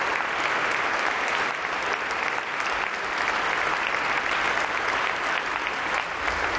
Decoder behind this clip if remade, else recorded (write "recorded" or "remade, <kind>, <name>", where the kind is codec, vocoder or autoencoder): recorded